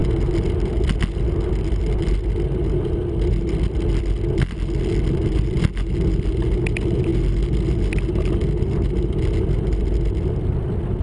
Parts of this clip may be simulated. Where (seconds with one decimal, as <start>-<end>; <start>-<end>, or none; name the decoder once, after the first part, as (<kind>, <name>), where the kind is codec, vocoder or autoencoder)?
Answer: none